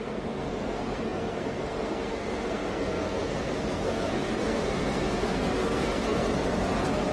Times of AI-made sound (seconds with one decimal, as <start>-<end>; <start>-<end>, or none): 0.0-7.1